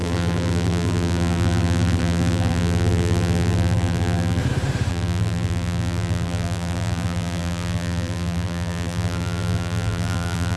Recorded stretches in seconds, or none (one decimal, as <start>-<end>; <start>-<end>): 4.4-4.9